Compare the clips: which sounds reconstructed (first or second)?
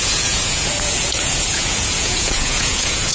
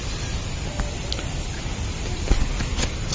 first